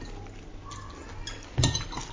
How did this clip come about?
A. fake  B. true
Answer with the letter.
B